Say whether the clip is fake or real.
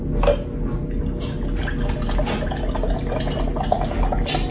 real